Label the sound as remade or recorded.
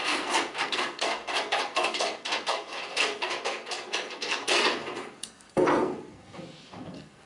remade